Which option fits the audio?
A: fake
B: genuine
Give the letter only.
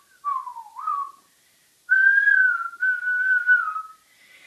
B